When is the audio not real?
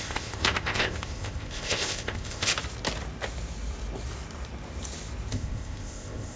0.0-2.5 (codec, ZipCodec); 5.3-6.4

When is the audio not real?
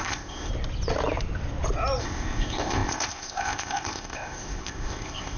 0.0-0.5 (codec, ZipCodec); 2.0-5.4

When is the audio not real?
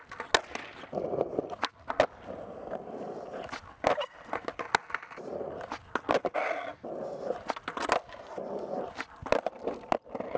none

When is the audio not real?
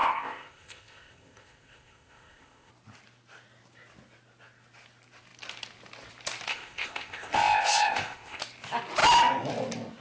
0.0-2.7 (codec, ZipCodec); 6.5-8.4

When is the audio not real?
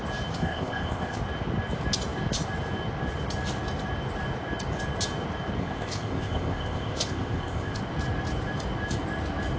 0.4-1.2 (codec, ZipCodec); 5.6-7.8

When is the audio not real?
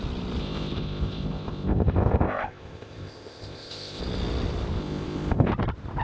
0.4-4.0 (codec, ZipCodec); 4.8-5.5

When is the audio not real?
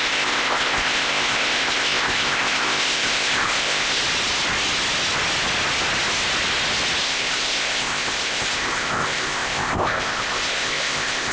0.0-4.0 (codec, ZipCodec); 7.0-11.3